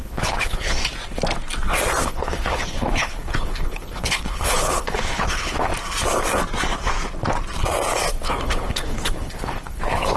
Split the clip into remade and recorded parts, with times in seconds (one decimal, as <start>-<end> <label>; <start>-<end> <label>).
0.0-0.8 remade; 0.8-2.0 recorded; 2.0-5.7 remade; 5.7-8.1 recorded; 8.1-10.2 remade